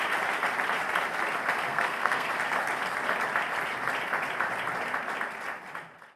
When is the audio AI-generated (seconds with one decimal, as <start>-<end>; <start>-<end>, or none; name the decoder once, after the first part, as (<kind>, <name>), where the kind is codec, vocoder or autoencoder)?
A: 1.7-2.3 (codec, SNAC)